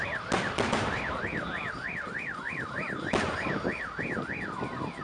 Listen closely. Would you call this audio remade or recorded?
recorded